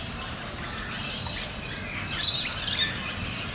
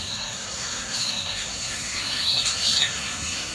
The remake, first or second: second